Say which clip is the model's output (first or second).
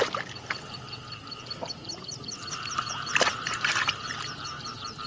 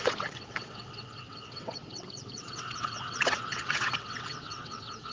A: second